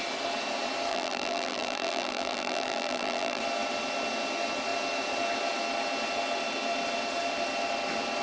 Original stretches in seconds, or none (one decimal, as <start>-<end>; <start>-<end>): 0.0-0.9; 3.4-8.2